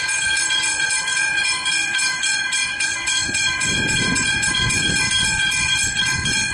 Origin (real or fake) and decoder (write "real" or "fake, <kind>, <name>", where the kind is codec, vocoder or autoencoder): fake, vocoder, Vocos